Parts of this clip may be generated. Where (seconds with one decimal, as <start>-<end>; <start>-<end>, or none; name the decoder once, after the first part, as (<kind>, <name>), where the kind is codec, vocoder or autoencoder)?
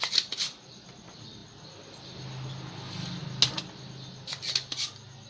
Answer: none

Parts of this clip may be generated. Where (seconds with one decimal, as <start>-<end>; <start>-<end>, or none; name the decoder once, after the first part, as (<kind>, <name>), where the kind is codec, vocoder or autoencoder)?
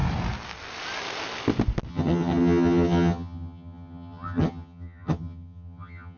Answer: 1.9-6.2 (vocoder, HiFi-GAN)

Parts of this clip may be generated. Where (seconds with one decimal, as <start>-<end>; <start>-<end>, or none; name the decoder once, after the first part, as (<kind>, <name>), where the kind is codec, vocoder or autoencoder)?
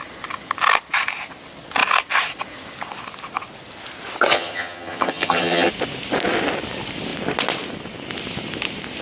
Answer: 4.3-5.7 (vocoder, HiFi-GAN)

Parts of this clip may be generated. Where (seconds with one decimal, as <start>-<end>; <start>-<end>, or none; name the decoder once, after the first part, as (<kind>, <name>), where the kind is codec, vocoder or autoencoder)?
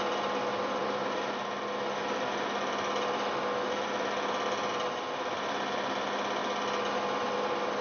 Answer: none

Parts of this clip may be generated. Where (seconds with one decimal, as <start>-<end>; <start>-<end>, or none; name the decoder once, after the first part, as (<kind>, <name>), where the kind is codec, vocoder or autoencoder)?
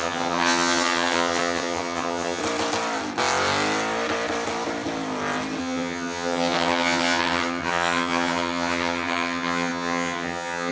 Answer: 0.0-2.4 (vocoder, HiFi-GAN); 5.6-10.7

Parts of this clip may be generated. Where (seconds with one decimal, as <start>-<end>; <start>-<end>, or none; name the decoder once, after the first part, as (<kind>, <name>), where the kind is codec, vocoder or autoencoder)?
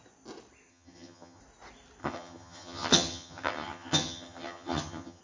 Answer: 0.7-1.4 (vocoder, HiFi-GAN); 2.0-5.2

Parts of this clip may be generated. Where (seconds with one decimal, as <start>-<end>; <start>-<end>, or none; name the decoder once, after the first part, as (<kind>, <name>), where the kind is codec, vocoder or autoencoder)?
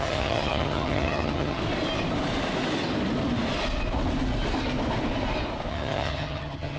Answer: 0.0-1.6 (vocoder, HiFi-GAN); 5.7-6.8